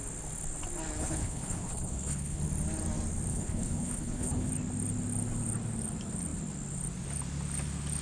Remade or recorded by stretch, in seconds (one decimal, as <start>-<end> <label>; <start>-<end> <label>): 0.0-1.0 recorded; 1.0-2.4 remade; 2.4-3.3 recorded; 3.3-4.5 remade; 4.5-8.0 recorded